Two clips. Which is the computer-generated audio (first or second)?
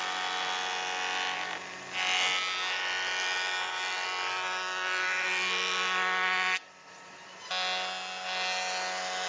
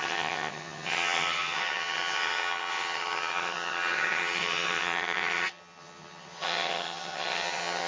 second